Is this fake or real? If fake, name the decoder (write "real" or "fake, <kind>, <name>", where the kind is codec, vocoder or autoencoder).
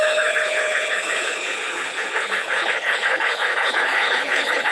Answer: fake, codec, HILCodec